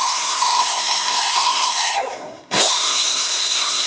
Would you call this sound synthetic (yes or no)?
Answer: yes